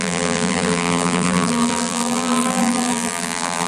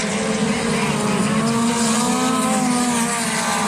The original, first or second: second